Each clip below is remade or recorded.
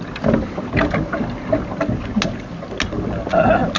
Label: recorded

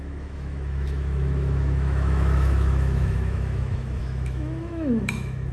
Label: remade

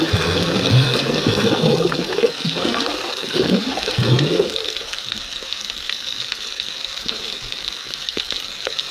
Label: remade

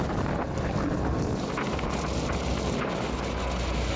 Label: recorded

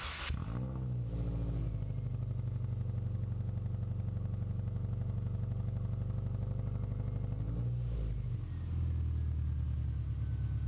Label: recorded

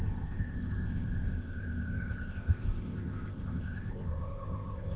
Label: remade